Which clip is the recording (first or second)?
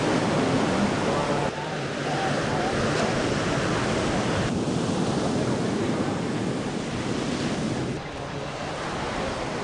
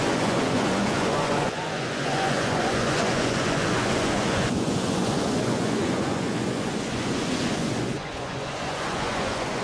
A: first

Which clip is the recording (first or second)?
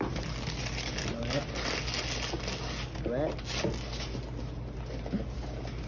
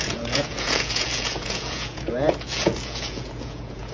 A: first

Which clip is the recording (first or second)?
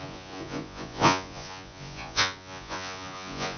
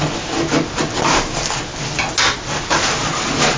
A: second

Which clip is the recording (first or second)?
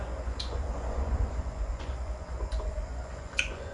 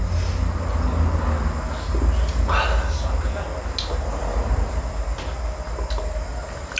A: second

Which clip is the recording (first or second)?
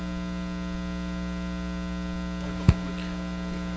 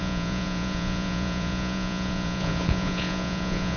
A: first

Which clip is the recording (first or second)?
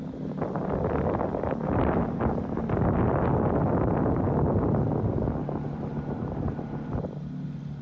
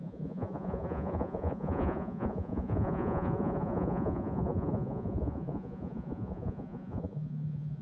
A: first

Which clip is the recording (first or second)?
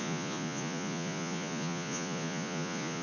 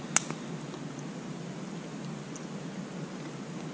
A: second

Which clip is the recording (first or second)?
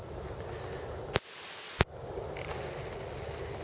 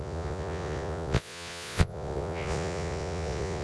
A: first